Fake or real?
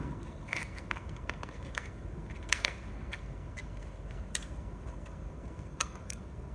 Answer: fake